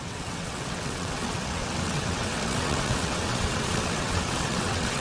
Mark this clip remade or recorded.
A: remade